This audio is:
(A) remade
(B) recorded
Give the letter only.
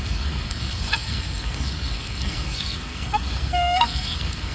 A